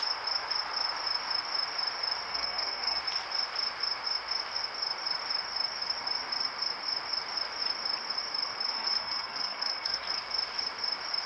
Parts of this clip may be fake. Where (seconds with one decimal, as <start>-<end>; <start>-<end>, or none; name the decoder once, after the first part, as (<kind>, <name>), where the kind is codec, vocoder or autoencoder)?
2.3-3.0 (codec, SNAC); 8.7-10.2